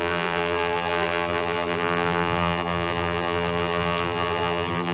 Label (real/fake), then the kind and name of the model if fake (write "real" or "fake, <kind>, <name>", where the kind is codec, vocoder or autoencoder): fake, vocoder, BigVGAN v2